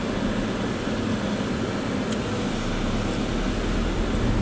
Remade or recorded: recorded